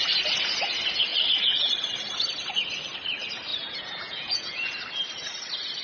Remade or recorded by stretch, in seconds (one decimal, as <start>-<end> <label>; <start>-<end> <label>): 0.0-3.5 recorded; 3.5-4.7 remade; 4.7-5.8 recorded